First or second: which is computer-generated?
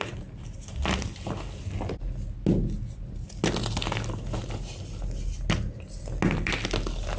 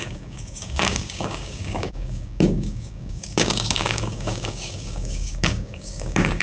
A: second